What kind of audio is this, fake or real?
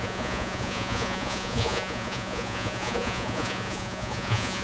fake